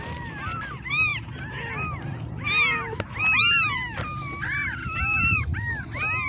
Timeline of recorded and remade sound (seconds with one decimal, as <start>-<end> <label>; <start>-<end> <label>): 0.0-4.6 recorded; 4.6-5.4 remade; 5.4-6.3 recorded